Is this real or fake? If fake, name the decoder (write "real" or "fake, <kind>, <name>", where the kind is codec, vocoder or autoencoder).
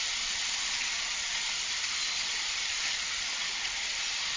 fake, vocoder, Vocos